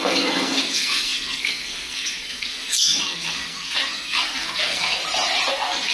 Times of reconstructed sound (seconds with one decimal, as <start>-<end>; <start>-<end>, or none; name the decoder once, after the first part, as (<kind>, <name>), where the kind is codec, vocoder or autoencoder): 0.0-5.0 (codec, SNAC); 5.5-5.9